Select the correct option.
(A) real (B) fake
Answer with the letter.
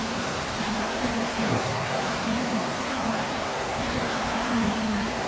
B